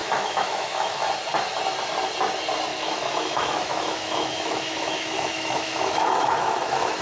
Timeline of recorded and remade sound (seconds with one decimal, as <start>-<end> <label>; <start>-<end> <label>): 0.0-1.0 remade; 1.0-2.7 recorded; 2.7-7.0 remade